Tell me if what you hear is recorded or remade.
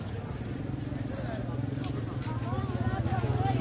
recorded